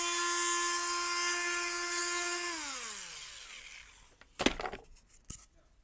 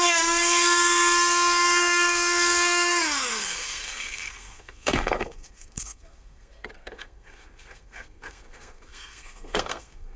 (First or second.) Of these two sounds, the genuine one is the first